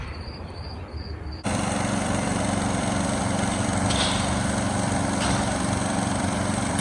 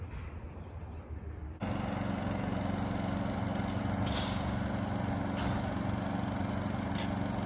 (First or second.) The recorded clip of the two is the second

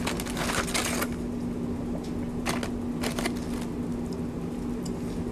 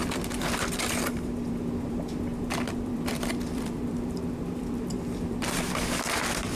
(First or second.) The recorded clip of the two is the first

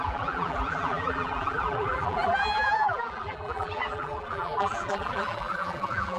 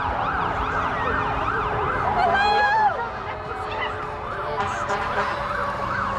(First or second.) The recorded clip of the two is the second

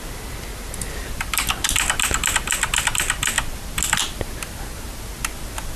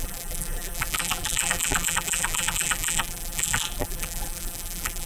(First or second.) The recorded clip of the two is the first